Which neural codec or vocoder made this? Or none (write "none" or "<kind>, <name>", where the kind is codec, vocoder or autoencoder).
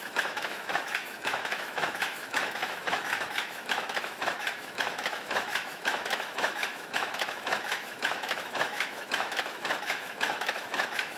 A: autoencoder, DAC-VAE